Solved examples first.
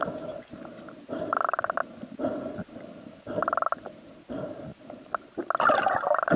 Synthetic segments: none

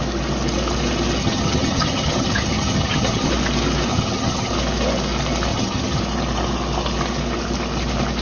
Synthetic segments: 1.2-3.3 (vocoder, HiFi-GAN); 3.9-4.5; 5.5-6.0

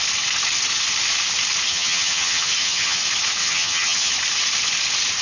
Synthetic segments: 1.7-3.0 (vocoder, HiFi-GAN); 3.4-4.1

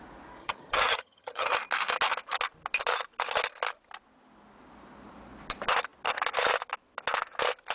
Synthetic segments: 0.4-1.5 (vocoder, HiFi-GAN)

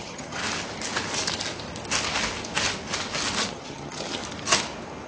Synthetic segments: 0.0-0.4 (vocoder, HiFi-GAN); 3.5-4.2

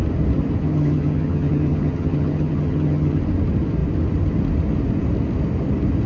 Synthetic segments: 0.6-3.2 (vocoder, HiFi-GAN)

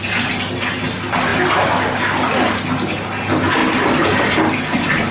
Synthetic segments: none

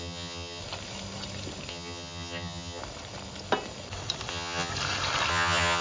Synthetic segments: 0.0-0.6 (vocoder, HiFi-GAN); 1.7-2.8; 4.3-4.7; 5.3-5.8